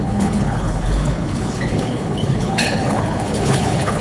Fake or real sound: fake